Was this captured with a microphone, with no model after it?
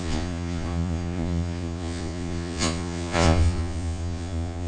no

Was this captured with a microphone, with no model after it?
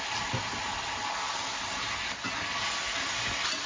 yes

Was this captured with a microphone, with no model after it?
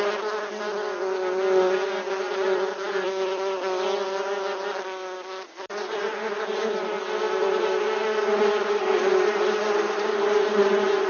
yes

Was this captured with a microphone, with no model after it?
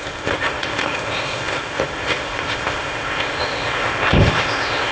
no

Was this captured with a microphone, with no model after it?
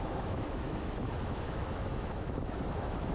no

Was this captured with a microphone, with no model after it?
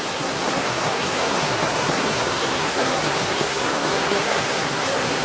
no